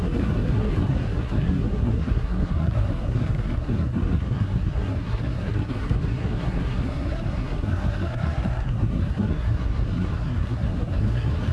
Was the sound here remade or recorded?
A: remade